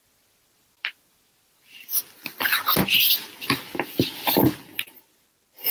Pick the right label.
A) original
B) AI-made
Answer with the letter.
A